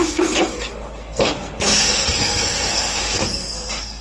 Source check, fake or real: fake